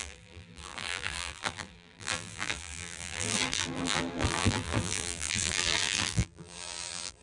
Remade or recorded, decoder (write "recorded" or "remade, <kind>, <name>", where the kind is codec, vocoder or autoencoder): remade, vocoder, BigVGAN v2